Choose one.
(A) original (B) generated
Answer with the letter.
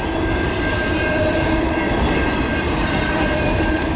B